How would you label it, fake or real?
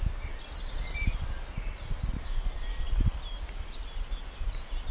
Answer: real